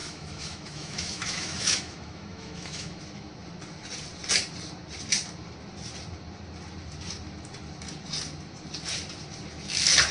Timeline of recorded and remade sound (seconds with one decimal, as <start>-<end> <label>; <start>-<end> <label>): 0.0-3.0 remade; 3.0-10.1 recorded